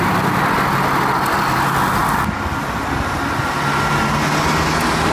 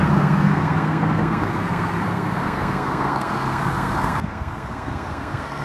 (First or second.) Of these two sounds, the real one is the first